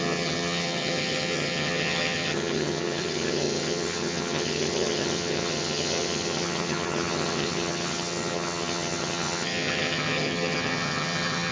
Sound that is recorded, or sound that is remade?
remade